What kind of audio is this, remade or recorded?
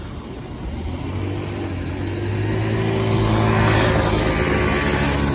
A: recorded